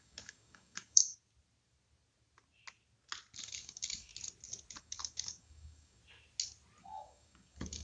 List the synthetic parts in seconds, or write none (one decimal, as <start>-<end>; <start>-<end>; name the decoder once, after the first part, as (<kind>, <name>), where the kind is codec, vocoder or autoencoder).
0.0-1.0 (codec, DAC); 3.4-4.1; 4.8-6.0; 6.8-7.8